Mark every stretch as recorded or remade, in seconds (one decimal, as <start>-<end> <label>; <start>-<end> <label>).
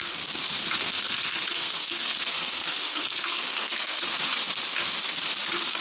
0.0-0.8 recorded; 0.8-4.1 remade; 4.1-5.8 recorded